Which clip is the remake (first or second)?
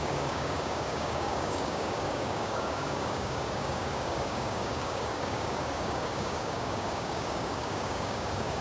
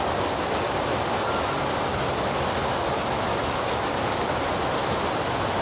first